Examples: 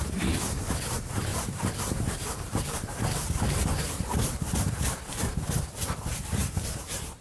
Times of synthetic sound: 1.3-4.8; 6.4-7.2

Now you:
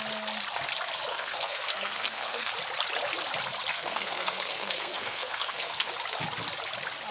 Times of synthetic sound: 1.1-2.5; 3.7-5.9

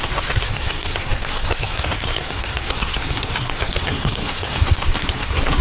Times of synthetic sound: 0.0-5.6

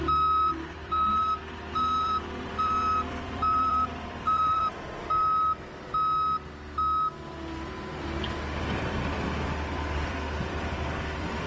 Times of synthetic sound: 0.0-5.0; 8.6-11.5